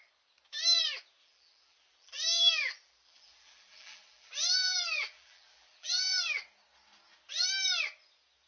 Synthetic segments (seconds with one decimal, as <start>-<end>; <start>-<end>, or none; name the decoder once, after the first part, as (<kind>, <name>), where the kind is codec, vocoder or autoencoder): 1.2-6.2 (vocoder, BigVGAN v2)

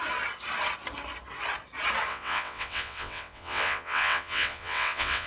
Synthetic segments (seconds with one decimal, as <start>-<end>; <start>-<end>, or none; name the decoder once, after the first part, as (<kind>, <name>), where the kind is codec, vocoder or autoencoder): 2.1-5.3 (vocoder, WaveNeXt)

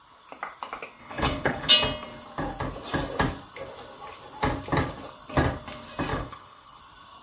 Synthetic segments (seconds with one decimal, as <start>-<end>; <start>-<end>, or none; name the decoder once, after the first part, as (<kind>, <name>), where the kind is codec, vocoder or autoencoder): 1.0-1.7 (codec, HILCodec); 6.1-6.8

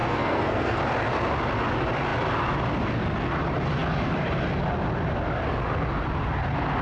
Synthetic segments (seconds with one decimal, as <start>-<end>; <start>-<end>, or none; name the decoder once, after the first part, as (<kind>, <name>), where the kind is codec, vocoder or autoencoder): 0.0-0.8 (codec, SNAC)

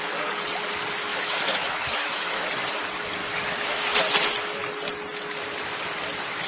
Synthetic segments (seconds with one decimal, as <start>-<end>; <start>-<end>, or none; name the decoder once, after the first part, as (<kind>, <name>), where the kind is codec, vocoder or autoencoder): 1.1-2.5 (autoencoder, DAC-VAE); 3.2-3.8

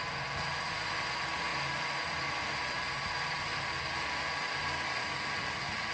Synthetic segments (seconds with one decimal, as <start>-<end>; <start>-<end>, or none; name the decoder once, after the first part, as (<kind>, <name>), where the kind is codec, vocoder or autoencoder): none

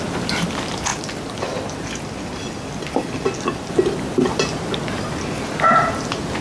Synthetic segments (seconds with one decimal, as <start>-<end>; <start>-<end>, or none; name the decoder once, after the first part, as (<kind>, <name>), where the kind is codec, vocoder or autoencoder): none

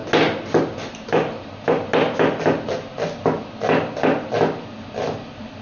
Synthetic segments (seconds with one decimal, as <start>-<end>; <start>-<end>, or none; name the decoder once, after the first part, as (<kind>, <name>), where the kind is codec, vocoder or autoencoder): none